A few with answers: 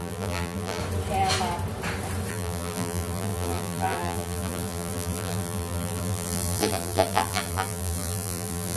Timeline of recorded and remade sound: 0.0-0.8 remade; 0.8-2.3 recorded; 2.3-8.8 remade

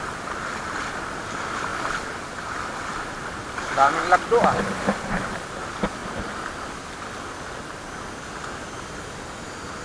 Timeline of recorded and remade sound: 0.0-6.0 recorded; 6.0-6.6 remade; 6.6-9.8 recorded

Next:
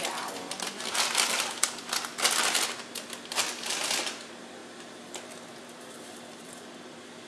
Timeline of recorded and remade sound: 0.0-2.1 remade; 2.1-3.4 recorded; 3.4-4.6 remade; 4.6-5.8 recorded; 5.8-7.3 remade